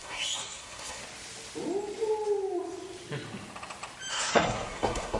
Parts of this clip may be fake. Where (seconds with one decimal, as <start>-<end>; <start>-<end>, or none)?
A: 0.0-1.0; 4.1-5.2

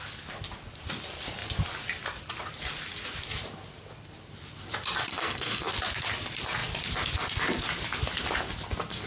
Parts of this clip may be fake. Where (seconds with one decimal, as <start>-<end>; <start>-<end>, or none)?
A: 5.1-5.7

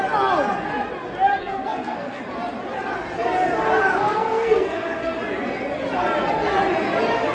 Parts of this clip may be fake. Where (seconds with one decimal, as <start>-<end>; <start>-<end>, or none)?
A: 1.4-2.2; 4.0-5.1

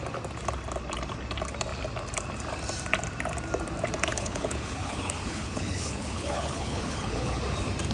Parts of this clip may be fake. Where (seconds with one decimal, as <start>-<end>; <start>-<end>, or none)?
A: 4.1-7.4

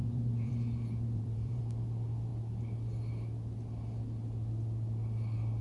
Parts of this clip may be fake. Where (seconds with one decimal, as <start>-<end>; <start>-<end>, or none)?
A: 0.0-1.6

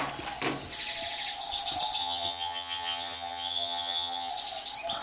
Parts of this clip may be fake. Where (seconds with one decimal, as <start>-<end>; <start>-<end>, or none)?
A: 2.0-4.3

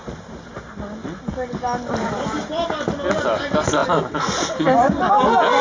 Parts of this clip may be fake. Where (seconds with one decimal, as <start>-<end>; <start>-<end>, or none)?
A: none

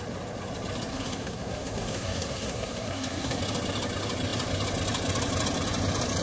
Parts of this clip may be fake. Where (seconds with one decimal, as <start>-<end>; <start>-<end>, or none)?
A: 0.9-3.4